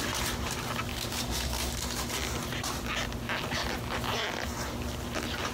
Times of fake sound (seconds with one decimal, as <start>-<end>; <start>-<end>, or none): 0.9-1.7